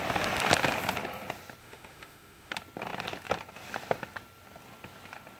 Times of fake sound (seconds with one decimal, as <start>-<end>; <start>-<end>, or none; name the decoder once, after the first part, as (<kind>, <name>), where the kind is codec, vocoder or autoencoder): 1.6-2.5 (autoencoder, DAC-VAE)